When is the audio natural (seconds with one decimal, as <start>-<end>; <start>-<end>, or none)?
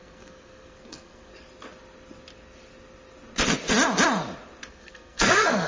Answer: 1.3-4.7